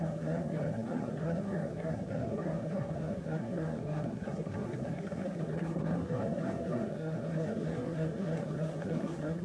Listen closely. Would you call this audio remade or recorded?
remade